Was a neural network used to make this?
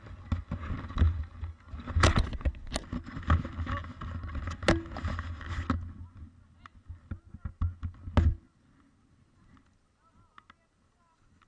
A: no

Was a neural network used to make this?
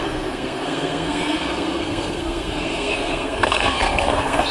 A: yes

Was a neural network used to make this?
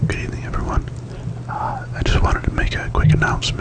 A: no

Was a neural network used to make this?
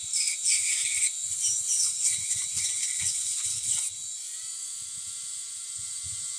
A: no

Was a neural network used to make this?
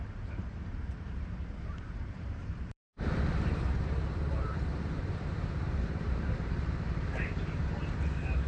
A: yes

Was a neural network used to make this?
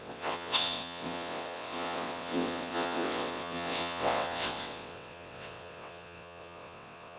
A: yes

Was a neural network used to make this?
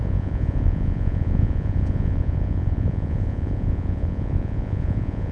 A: yes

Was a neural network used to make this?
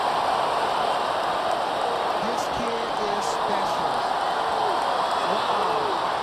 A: no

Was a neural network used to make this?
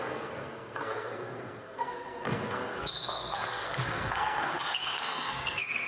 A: yes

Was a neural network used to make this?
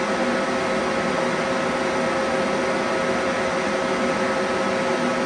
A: no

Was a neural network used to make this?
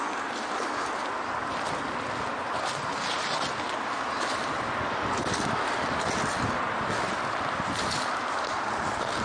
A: no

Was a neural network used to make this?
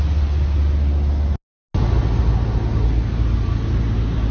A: no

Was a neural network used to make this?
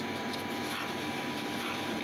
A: no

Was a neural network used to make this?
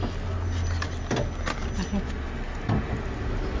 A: no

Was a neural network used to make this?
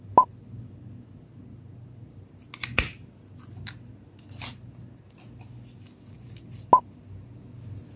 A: no